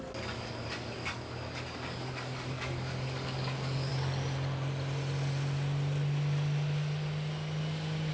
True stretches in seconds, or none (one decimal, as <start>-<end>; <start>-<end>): 3.9-8.1